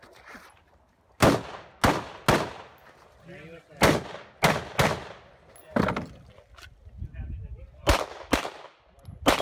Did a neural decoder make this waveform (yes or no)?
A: no